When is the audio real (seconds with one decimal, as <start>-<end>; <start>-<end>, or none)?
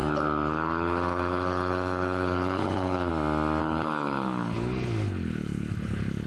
3.1-3.6